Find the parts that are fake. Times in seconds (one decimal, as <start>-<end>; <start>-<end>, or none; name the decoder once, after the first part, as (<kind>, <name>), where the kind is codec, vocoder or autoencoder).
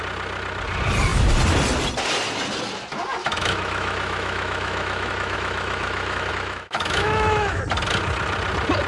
3.2-7.6 (autoencoder, DAC-VAE)